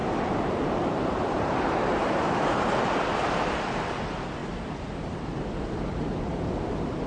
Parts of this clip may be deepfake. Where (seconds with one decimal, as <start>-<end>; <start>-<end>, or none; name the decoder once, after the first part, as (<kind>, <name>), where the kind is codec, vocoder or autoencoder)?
0.0-2.9 (vocoder, BigVGAN v2); 4.4-5.6